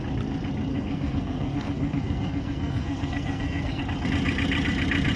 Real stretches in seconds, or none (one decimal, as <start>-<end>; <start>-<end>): 0.0-0.7; 3.8-5.2